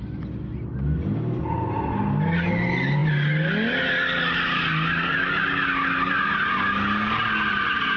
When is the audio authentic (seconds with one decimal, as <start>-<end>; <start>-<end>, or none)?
0.0-8.0